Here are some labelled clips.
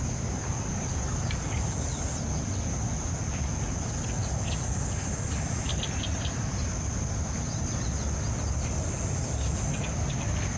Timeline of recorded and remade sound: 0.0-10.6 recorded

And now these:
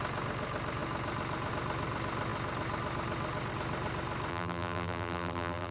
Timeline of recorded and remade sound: 0.0-4.3 recorded; 4.3-5.7 remade

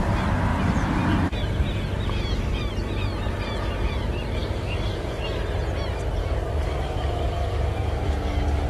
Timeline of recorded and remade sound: 0.0-4.4 recorded; 4.4-5.1 remade; 5.1-6.2 recorded; 6.2-8.7 remade

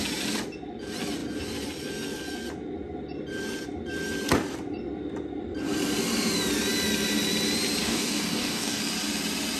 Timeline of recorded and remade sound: 0.0-7.8 recorded; 7.8-8.8 remade; 8.8-9.6 recorded